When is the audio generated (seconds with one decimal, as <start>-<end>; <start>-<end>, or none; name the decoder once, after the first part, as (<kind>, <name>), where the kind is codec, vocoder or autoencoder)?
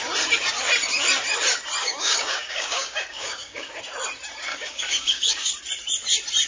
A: 1.8-3.8 (codec, DAC); 4.5-5.5